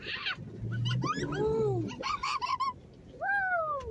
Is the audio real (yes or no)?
yes